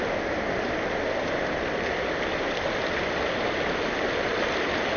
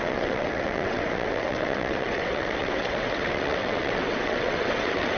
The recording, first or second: first